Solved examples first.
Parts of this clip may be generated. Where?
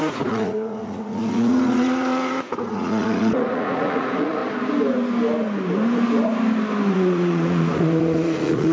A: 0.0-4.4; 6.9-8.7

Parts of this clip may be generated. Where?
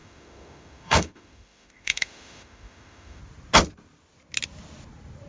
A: 0.0-3.2